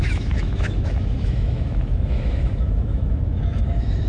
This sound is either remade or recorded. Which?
remade